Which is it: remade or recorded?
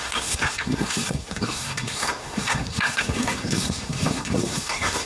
remade